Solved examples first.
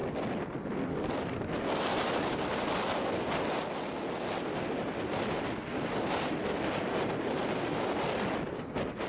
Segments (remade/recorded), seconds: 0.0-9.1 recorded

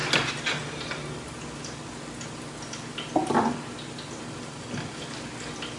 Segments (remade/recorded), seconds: 0.0-5.8 recorded

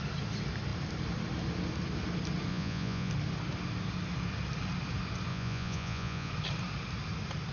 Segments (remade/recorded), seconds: 0.0-2.5 recorded; 2.5-3.1 remade; 3.1-5.3 recorded; 5.3-6.3 remade; 6.3-7.5 recorded

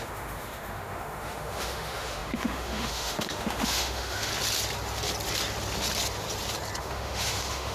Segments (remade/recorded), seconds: 0.0-4.3 remade; 4.3-6.8 recorded; 6.8-7.7 remade

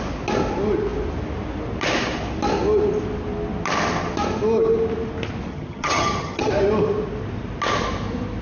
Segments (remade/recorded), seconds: 0.0-5.5 recorded; 5.5-6.5 remade; 6.5-8.4 recorded

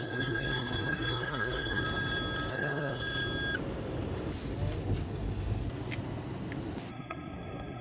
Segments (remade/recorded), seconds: 0.0-1.8 remade; 1.8-2.5 recorded; 2.5-3.0 remade; 3.0-6.9 recorded; 6.9-7.8 remade

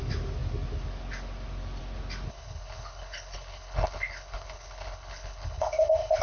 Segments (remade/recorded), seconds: 0.0-2.3 recorded; 2.3-6.2 remade

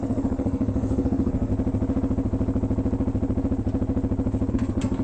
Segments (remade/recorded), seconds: 0.0-1.5 remade; 1.5-4.5 recorded; 4.5-5.0 remade